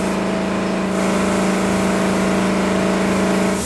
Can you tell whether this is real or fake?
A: real